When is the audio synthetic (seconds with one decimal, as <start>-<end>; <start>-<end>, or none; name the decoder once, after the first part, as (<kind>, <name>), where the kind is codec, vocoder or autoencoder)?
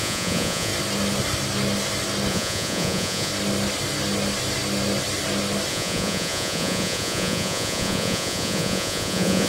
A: 0.0-0.7 (vocoder, Vocos); 2.3-3.3; 5.7-9.5